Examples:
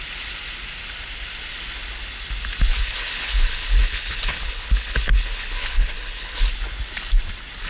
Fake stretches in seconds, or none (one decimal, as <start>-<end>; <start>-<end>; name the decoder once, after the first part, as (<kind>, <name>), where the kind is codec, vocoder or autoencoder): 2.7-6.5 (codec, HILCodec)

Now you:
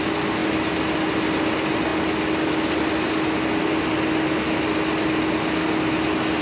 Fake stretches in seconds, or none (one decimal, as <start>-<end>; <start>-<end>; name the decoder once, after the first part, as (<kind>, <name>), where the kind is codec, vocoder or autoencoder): none

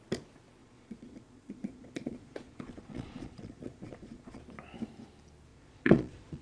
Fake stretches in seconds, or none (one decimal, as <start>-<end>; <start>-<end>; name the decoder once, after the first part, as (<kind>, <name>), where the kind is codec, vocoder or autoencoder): 0.6-4.4 (vocoder, Vocos); 5.5-6.4

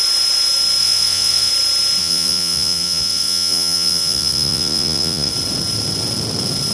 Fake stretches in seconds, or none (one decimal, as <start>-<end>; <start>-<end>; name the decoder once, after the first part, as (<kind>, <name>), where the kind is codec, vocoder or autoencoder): 0.8-1.5 (vocoder, Vocos); 2.0-5.3

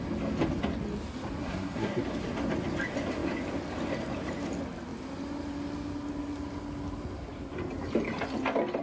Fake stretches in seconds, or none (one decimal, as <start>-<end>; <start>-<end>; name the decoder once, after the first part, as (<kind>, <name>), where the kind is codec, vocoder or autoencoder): 1.4-2.0 (codec, SNAC)